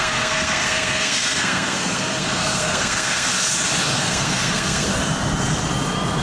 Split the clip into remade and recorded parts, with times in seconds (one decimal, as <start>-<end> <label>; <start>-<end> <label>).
0.0-3.3 remade; 3.3-4.0 recorded; 4.0-4.9 remade; 4.9-6.2 recorded